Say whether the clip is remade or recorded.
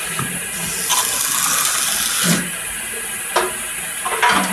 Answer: recorded